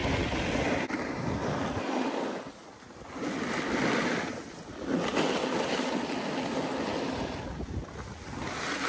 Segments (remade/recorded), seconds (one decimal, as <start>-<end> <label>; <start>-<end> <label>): 0.0-8.9 recorded